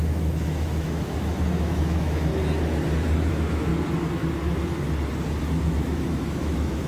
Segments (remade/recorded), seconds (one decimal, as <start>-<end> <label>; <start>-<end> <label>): 0.0-2.3 remade; 2.3-3.3 recorded; 3.3-3.7 remade; 3.7-5.6 recorded; 5.6-6.9 remade